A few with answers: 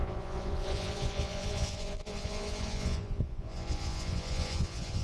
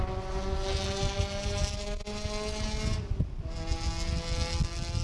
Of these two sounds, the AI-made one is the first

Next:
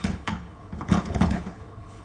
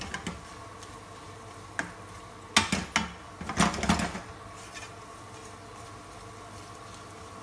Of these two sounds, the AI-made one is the first